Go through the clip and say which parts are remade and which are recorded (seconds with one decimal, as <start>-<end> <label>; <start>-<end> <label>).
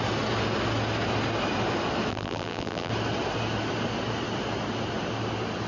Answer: 0.0-2.1 recorded; 2.1-2.9 remade; 2.9-5.7 recorded